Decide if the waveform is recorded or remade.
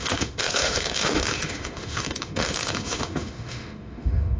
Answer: remade